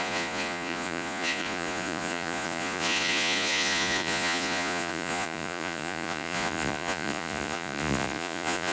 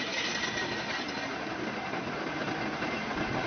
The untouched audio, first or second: second